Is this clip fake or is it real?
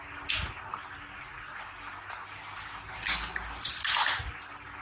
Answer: real